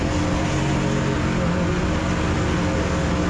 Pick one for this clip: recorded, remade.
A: recorded